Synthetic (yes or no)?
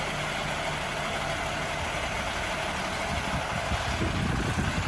no